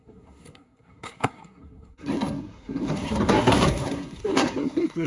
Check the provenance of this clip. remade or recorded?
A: remade